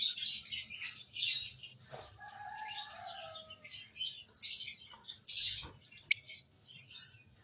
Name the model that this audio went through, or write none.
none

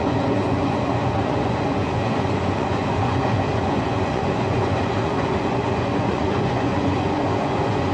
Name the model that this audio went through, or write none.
vocoder, Vocos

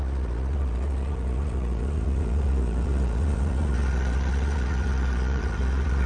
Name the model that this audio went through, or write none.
vocoder, Vocos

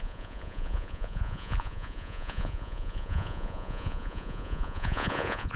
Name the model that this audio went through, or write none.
vocoder, Vocos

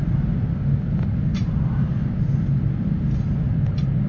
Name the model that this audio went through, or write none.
none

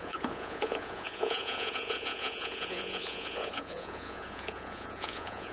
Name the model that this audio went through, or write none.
vocoder, Vocos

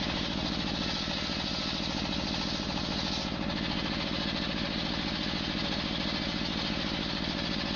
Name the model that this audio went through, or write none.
none